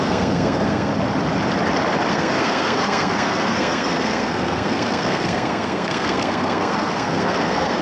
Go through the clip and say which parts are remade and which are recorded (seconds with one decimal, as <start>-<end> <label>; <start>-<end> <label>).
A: 0.0-0.9 remade; 0.9-2.1 recorded; 2.1-7.8 remade